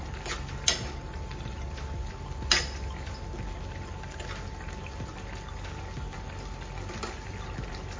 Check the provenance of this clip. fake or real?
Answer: real